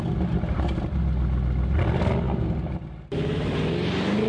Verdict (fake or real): real